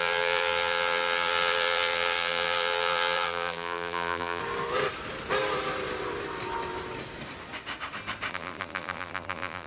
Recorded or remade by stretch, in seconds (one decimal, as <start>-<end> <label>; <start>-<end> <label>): 0.0-4.4 remade; 4.4-8.3 recorded; 8.3-9.7 remade